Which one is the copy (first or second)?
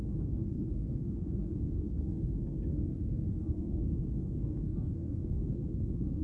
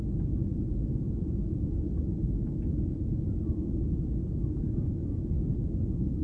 first